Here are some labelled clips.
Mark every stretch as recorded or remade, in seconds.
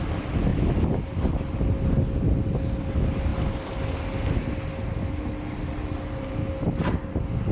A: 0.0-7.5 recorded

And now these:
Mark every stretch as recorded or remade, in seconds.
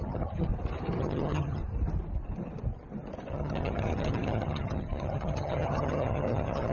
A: 0.0-0.5 remade; 0.5-1.0 recorded; 1.0-1.6 remade; 1.6-3.3 recorded; 3.3-6.7 remade